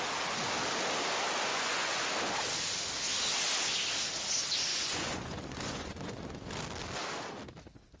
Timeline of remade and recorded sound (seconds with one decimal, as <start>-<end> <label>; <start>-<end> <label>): 0.0-1.5 recorded; 1.5-2.0 remade; 2.0-4.7 recorded; 4.7-6.5 remade; 6.5-8.0 recorded

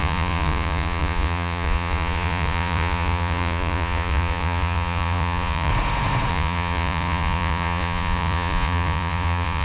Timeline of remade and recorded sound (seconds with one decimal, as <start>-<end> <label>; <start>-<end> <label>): 0.0-5.7 remade; 5.7-6.3 recorded; 6.3-9.6 remade

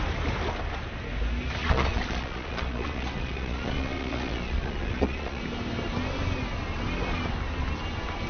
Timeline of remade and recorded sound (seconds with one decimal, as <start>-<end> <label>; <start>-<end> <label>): 0.0-1.6 recorded; 1.6-5.4 remade; 5.4-8.3 recorded

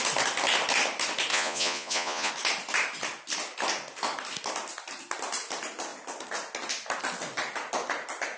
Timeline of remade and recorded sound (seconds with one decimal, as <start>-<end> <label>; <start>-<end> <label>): 0.0-1.3 recorded; 1.3-2.3 remade; 2.3-8.4 recorded

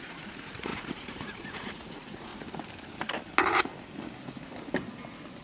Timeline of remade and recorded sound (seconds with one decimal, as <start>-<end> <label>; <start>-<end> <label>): 0.0-2.3 remade; 2.3-5.4 recorded